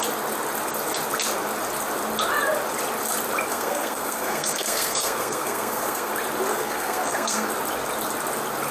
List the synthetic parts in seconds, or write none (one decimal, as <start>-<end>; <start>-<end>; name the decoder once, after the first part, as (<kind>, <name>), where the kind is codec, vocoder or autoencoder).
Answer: 3.5-6.1 (codec, SNAC); 6.5-7.5